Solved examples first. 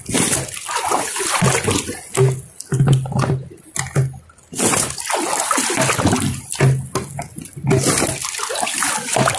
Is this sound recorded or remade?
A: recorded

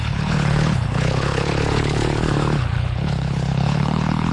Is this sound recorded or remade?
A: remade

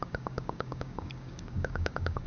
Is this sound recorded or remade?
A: remade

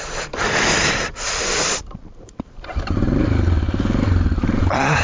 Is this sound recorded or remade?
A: remade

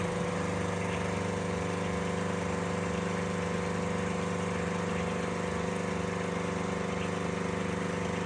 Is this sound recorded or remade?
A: recorded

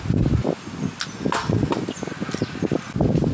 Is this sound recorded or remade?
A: recorded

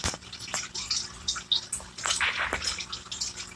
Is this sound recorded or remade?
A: recorded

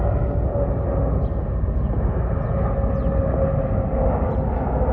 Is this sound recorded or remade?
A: recorded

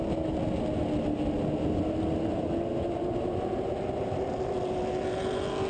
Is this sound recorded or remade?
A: recorded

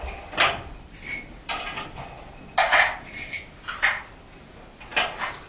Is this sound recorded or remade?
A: recorded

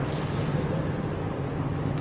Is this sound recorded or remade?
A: recorded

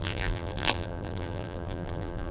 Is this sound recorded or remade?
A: remade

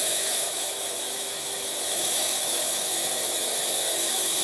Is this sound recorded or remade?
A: remade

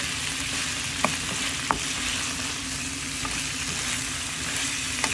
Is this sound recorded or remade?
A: recorded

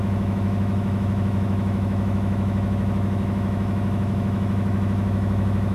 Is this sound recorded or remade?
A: remade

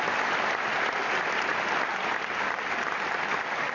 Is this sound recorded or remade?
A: recorded